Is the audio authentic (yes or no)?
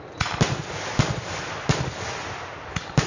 yes